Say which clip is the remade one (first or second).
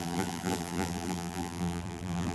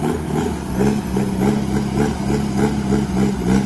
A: first